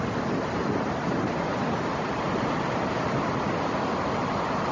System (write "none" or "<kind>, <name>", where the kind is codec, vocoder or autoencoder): none